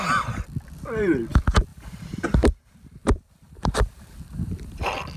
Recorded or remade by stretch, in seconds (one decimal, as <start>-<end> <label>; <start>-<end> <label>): 0.0-1.7 recorded; 1.7-4.8 remade; 4.8-5.2 recorded